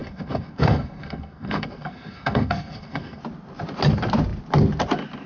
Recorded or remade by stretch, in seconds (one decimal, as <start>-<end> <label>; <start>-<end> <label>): 0.0-3.2 remade; 3.2-5.3 recorded